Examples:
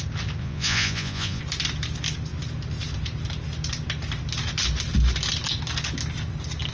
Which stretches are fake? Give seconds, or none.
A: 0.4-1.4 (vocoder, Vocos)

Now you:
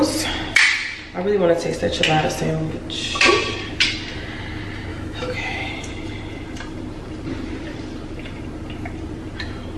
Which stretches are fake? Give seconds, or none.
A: 4.9-5.7 (autoencoder, DAC-VAE)

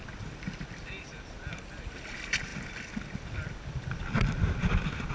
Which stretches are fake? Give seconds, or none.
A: none

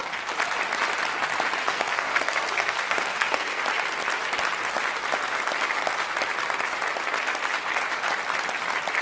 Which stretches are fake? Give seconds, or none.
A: 1.6-3.6 (codec, SNAC)

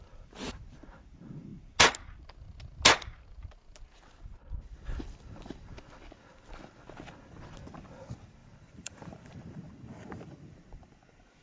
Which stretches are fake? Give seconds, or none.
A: 0.0-0.6 (vocoder, BigVGAN v2); 8.4-9.3